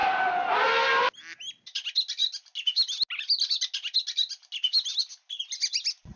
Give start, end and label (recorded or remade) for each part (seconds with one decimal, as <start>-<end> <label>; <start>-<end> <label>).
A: 0.0-6.2 recorded